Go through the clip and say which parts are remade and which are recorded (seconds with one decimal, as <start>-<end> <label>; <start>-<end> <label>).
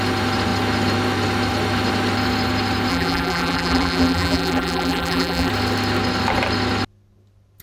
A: 0.0-2.9 recorded; 2.9-5.5 remade; 5.5-7.6 recorded